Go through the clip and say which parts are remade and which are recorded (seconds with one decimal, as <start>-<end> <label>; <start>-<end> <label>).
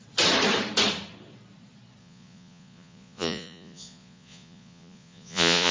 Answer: 0.0-2.0 recorded; 2.0-5.7 remade